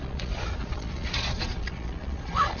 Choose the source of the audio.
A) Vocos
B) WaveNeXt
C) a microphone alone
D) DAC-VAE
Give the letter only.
A